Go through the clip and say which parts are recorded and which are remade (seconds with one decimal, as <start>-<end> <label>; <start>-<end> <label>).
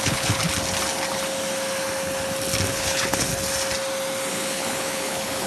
0.0-0.4 remade; 0.4-2.7 recorded; 2.7-3.3 remade; 3.3-4.3 recorded; 4.3-5.5 remade